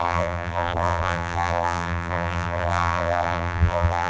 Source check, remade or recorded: remade